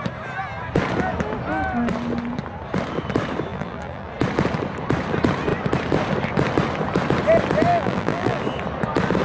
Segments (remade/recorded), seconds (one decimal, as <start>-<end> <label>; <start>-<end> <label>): 0.0-3.5 recorded; 3.5-4.1 remade; 4.1-7.7 recorded; 7.7-8.4 remade; 8.4-9.2 recorded